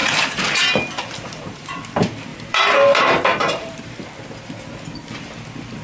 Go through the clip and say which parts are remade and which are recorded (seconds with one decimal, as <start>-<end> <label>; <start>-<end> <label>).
0.0-1.8 remade; 1.8-2.3 recorded; 2.3-4.0 remade; 4.0-5.8 recorded